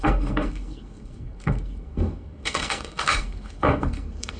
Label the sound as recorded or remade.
remade